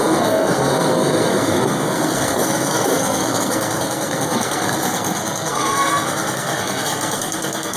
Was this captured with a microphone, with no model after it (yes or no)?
no